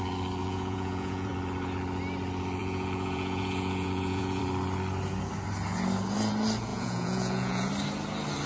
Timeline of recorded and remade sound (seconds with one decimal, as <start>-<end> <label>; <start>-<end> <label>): 0.0-0.4 recorded; 0.4-1.3 remade; 1.3-2.6 recorded; 2.6-4.4 remade; 4.4-6.7 recorded; 6.7-7.7 remade; 7.7-8.5 recorded